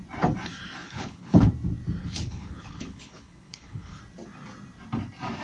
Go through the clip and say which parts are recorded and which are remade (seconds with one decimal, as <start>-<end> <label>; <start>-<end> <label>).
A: 0.0-0.8 recorded; 0.8-1.5 remade; 1.5-2.0 recorded; 2.0-4.0 remade; 4.0-5.4 recorded

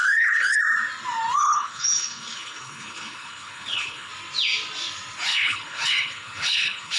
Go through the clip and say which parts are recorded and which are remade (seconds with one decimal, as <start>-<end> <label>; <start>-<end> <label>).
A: 0.0-0.6 remade; 0.6-1.4 recorded; 1.4-4.1 remade; 4.1-5.3 recorded; 5.3-7.0 remade

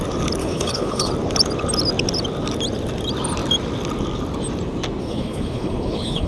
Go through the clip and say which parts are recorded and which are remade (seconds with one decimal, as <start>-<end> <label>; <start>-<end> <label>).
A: 0.0-0.4 recorded; 0.4-1.1 remade; 1.1-5.0 recorded; 5.0-6.3 remade

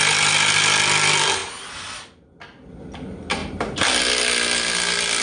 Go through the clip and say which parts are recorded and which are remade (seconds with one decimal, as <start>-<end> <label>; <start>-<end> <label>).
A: 0.0-5.2 recorded

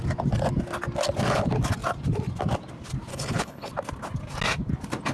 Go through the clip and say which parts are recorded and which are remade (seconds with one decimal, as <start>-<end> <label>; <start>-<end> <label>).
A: 0.0-3.1 recorded; 3.1-3.7 remade; 3.7-5.1 recorded

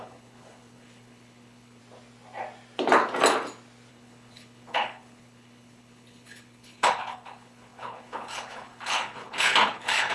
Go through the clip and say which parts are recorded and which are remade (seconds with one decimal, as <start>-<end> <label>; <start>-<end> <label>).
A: 0.0-1.8 remade; 1.8-3.9 recorded; 3.9-10.1 remade